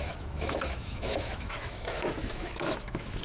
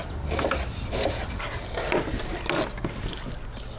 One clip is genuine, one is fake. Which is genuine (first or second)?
second